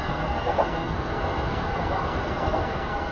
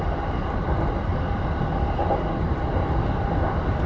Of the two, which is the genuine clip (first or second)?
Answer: second